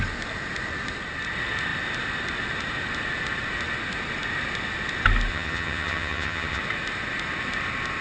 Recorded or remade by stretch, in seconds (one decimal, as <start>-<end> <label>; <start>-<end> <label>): 0.0-5.3 recorded; 5.3-6.6 remade; 6.6-8.0 recorded